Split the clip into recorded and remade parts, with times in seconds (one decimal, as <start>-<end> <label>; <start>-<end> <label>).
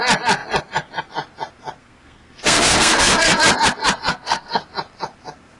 0.0-1.8 recorded; 1.8-3.4 remade; 3.4-4.1 recorded; 4.1-4.6 remade; 4.6-5.6 recorded